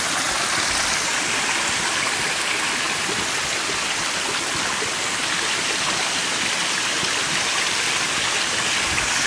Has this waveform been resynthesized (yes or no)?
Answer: no